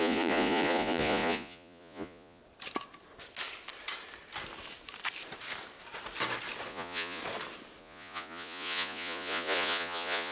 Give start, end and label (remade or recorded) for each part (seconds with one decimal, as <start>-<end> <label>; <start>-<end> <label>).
0.0-2.4 remade; 2.4-6.7 recorded; 6.7-7.2 remade; 7.2-7.8 recorded; 7.8-10.3 remade